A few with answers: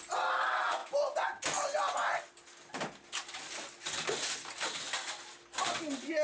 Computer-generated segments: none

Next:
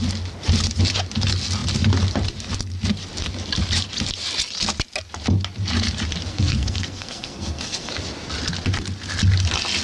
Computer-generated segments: 6.3-7.9 (codec, SNAC)